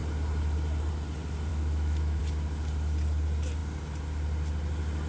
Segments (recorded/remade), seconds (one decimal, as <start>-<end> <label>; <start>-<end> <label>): 0.0-1.5 recorded; 1.5-2.2 remade; 2.2-5.1 recorded